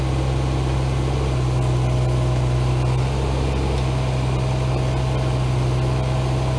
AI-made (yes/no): no